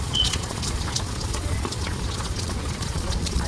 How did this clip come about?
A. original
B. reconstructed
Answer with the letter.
B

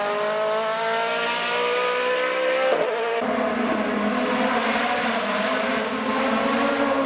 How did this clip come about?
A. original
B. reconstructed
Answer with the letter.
A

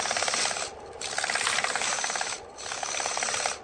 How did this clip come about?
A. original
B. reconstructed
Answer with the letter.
A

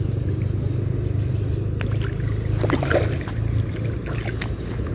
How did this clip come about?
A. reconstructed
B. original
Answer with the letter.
B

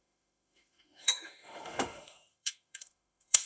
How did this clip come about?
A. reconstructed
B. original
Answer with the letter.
A